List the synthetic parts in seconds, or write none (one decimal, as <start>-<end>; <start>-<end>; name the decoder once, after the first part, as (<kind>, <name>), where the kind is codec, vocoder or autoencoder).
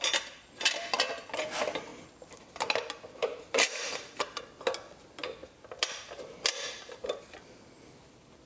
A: 3.2-4.4 (vocoder, BigVGAN v2)